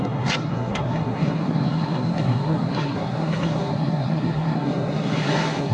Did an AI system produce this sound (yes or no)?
yes